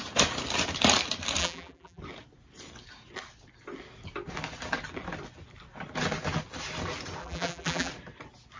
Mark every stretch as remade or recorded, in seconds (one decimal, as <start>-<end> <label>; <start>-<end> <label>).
0.0-1.4 recorded; 1.4-2.0 remade; 2.0-7.2 recorded; 7.2-7.9 remade; 7.9-8.6 recorded